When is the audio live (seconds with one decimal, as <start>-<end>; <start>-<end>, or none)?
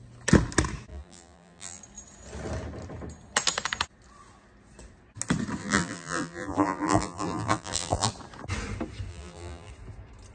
0.0-0.9; 1.8-5.6; 8.1-9.1; 9.7-10.3